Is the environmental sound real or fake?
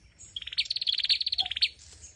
real